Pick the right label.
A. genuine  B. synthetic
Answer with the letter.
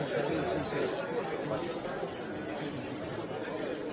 A